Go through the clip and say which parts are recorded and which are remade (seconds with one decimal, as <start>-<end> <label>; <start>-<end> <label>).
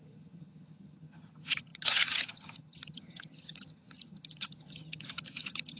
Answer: 0.0-5.8 remade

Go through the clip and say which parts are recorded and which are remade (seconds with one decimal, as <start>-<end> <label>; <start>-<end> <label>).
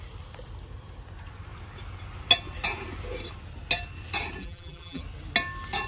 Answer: 0.0-4.4 recorded; 4.4-5.0 remade; 5.0-5.9 recorded